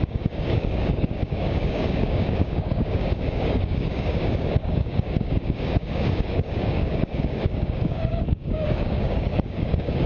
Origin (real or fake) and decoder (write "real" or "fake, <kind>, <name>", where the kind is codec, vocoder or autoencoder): fake, codec, DAC